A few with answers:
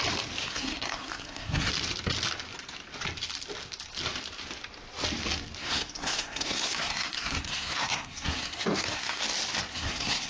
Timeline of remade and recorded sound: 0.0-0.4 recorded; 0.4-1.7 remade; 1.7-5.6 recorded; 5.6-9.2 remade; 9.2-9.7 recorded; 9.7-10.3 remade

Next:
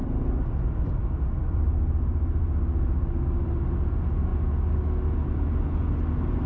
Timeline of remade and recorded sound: 0.0-6.5 recorded

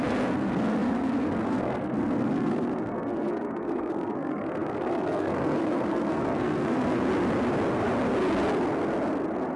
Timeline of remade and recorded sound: 0.0-7.1 remade; 7.1-9.6 recorded